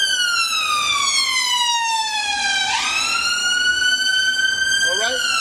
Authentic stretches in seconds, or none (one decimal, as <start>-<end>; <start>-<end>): 0.0-1.7; 2.4-3.4; 4.4-5.4